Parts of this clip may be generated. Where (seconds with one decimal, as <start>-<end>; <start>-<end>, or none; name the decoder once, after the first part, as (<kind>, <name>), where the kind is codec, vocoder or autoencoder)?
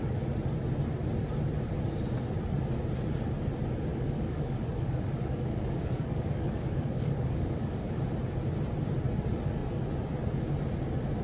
3.9-7.9 (codec, DAC)